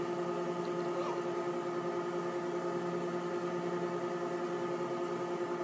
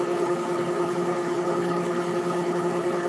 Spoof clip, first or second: second